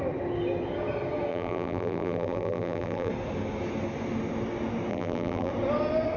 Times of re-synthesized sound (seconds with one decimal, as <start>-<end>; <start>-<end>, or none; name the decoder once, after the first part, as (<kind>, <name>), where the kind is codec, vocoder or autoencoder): 1.3-3.1 (vocoder, BigVGAN v2); 4.9-5.5